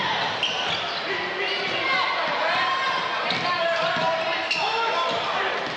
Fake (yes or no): no